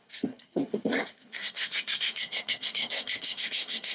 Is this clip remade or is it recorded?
remade